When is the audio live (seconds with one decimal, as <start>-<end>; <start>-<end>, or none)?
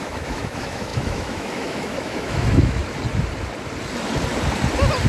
2.8-5.1